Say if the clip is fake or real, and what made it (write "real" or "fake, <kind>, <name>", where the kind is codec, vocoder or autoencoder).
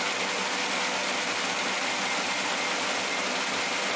real